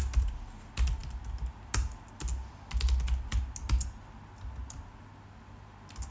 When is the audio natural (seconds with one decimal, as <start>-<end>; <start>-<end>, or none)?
0.0-6.1